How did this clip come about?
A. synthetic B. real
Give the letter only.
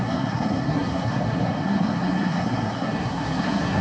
A